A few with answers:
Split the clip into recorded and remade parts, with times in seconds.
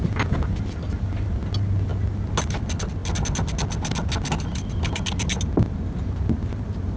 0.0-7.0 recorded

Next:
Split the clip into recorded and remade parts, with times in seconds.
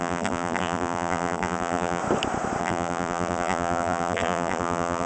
0.0-2.0 remade; 2.0-2.6 recorded; 2.6-5.1 remade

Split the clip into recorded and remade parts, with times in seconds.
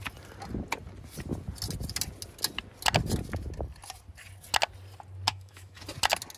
0.0-5.3 recorded; 5.3-5.8 remade; 5.8-6.4 recorded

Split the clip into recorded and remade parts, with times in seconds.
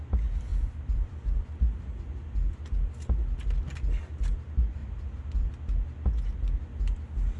0.0-0.5 recorded; 0.5-1.6 remade; 1.6-4.8 recorded; 4.8-5.5 remade; 5.5-7.4 recorded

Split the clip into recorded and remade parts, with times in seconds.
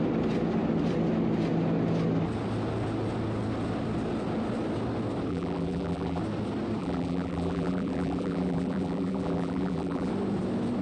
0.0-5.3 recorded; 5.3-6.2 remade; 6.2-6.8 recorded; 6.8-10.1 remade; 10.1-10.8 recorded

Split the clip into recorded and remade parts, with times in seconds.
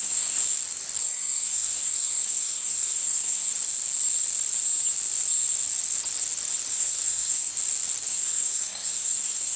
0.0-0.4 remade; 0.4-1.0 recorded; 1.0-3.5 remade; 3.5-6.7 recorded; 6.7-7.5 remade; 7.5-8.1 recorded; 8.1-9.6 remade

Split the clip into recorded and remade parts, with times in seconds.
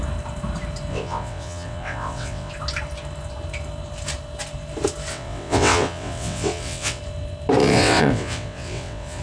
0.0-0.9 recorded; 0.9-2.5 remade; 2.5-5.1 recorded; 5.1-7.0 remade; 7.0-7.6 recorded; 7.6-9.2 remade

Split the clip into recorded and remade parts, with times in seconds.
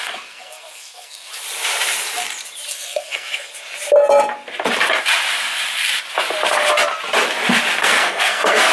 0.0-1.3 remade; 1.3-2.7 recorded; 2.7-3.5 remade; 3.5-7.8 recorded; 7.8-8.7 remade